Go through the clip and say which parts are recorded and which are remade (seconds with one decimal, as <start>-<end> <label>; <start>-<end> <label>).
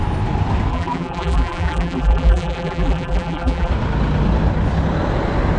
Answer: 0.0-0.7 recorded; 0.7-3.7 remade; 3.7-5.6 recorded